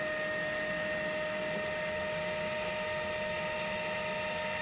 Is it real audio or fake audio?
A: real